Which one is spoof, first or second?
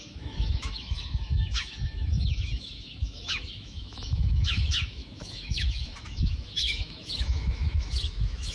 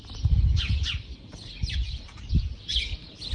first